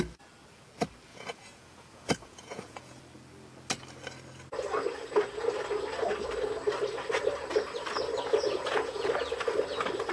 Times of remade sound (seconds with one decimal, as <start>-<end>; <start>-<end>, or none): 1.1-3.0; 8.3-9.1